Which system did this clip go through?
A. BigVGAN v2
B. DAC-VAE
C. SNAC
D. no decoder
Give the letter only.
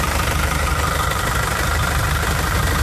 A